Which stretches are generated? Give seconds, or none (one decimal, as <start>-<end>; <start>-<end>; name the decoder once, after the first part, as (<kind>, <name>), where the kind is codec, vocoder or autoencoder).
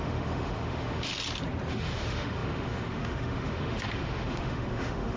0.0-1.1 (autoencoder, DAC-VAE); 1.7-5.2